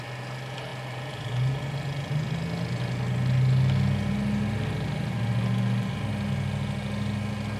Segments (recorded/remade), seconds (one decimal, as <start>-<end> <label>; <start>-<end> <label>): 0.0-7.6 recorded